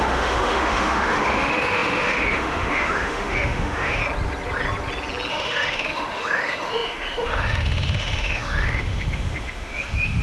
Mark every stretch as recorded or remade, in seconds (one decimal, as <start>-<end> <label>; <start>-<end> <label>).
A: 0.0-4.0 remade; 4.0-5.3 recorded; 5.3-10.2 remade